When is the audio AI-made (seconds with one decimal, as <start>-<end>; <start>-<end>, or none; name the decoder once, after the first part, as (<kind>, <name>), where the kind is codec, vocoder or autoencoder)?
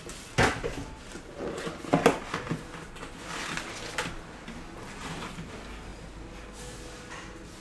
none